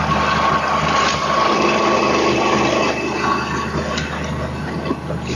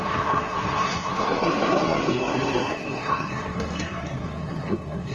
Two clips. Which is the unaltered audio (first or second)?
first